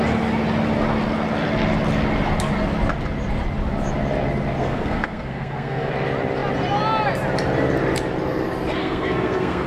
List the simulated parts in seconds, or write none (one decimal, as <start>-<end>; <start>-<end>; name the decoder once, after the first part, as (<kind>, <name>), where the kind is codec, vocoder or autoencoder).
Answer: 4.6-5.9 (codec, SNAC); 8.8-9.7